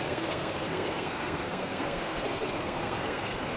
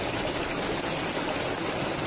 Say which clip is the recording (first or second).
second